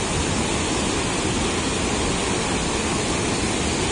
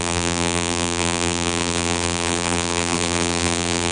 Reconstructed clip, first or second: second